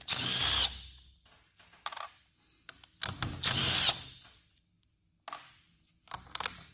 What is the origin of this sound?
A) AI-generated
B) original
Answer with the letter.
B